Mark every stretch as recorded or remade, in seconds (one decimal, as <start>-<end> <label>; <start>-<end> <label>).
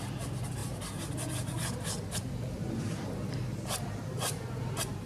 0.0-5.1 remade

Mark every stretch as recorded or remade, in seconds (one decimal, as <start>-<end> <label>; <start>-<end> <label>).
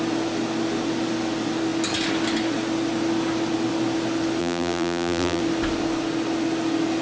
0.0-4.4 recorded; 4.4-5.4 remade; 5.4-7.0 recorded